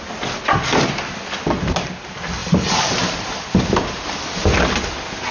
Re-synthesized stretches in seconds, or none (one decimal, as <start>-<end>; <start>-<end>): none